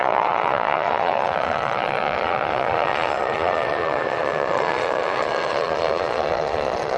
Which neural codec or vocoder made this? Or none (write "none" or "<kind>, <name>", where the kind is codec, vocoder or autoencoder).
vocoder, Vocos